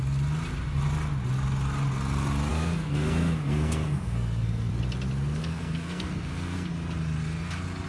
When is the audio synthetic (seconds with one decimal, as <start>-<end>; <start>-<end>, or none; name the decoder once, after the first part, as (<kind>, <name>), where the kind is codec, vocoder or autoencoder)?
2.5-4.7 (codec, SNAC); 5.4-6.7